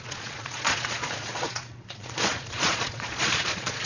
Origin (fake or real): fake